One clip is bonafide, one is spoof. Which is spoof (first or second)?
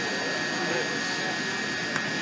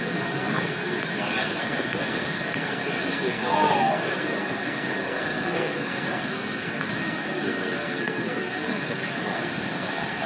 second